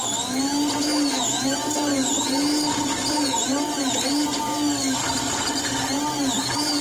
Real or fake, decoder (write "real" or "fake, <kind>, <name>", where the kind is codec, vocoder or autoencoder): real